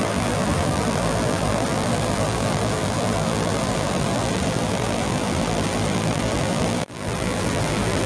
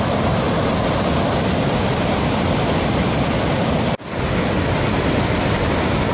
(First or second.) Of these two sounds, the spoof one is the first